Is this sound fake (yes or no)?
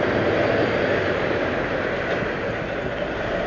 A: no